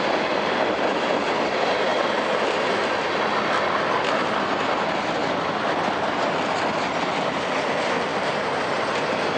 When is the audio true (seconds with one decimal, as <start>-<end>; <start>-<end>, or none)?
1.9-4.6; 8.1-9.4